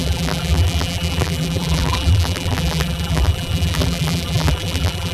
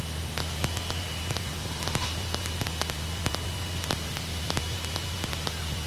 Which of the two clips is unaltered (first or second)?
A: second